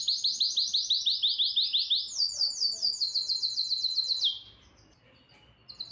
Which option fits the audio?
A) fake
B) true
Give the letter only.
B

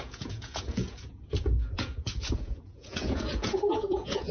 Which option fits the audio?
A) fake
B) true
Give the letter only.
A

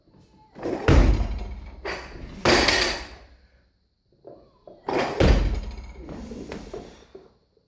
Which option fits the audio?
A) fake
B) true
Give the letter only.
B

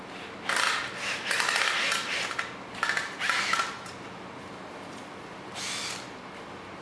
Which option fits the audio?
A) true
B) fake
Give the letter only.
A